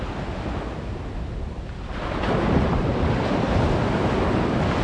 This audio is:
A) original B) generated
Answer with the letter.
A